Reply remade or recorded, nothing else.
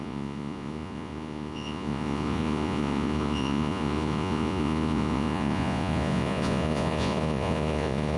remade